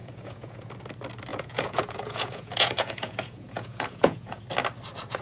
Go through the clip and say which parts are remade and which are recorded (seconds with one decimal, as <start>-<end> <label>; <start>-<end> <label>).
0.0-0.7 remade; 0.7-1.3 recorded; 1.3-4.4 remade; 4.4-5.2 recorded